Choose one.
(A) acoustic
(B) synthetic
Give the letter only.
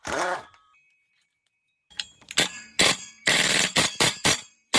B